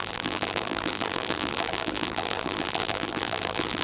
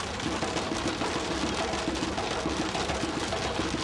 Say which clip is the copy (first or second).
first